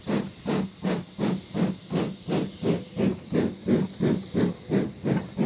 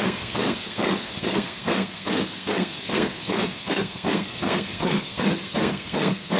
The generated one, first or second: second